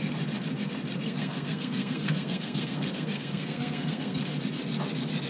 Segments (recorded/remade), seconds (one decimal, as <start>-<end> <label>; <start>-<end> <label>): 0.0-1.0 recorded; 1.0-4.2 remade; 4.2-5.3 recorded